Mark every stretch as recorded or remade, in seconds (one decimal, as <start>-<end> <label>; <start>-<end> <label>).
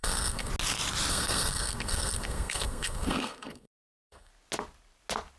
0.0-0.5 remade; 0.5-1.1 recorded; 1.1-4.3 remade; 4.3-5.4 recorded